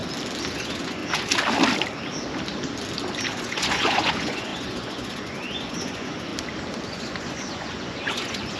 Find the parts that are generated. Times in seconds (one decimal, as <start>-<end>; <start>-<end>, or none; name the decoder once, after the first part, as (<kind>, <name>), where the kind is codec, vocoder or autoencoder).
0.5-1.0 (vocoder, Vocos); 3.3-6.3; 6.9-8.6